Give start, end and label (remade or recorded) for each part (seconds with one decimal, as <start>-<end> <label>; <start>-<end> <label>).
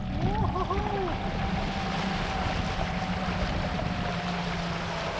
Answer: 0.0-5.2 recorded